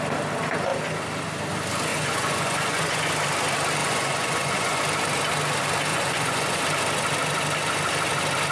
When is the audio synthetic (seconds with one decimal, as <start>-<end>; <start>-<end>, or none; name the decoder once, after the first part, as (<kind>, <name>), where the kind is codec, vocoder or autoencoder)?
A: 1.9-3.1 (vocoder, Vocos); 3.8-4.8; 5.9-6.6